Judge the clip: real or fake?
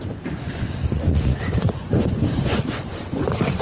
fake